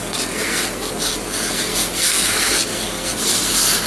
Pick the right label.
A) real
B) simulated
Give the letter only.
B